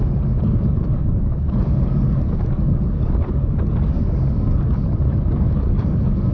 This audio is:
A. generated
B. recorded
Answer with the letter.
A